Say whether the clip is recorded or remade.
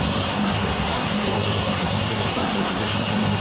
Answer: remade